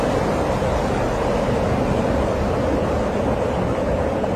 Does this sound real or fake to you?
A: real